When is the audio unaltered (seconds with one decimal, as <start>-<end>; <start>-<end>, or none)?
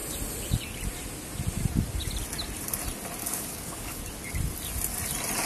0.0-3.2; 4.0-5.5